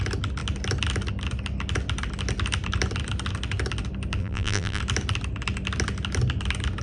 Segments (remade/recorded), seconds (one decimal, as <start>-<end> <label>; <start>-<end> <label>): 0.0-4.2 recorded; 4.2-4.8 remade; 4.8-6.8 recorded